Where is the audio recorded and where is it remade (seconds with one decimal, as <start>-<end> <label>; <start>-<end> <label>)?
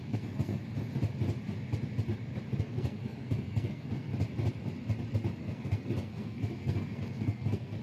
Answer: 0.0-0.6 remade; 0.6-2.6 recorded; 2.6-4.1 remade; 4.1-5.4 recorded; 5.4-7.8 remade